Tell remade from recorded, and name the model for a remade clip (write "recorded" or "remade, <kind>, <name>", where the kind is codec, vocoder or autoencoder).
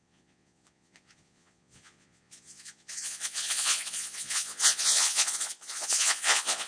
remade, vocoder, Vocos